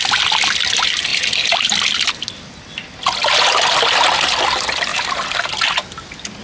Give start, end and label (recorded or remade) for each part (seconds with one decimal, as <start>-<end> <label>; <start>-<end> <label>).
0.0-4.9 recorded; 4.9-5.6 remade; 5.6-6.4 recorded